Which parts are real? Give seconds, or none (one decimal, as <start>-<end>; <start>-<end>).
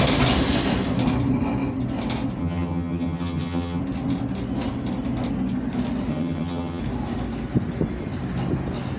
0.0-2.4; 3.8-6.1; 6.8-9.0